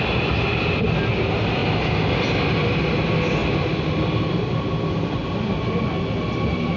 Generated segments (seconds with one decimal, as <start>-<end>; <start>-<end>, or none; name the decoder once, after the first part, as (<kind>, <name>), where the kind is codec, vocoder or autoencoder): none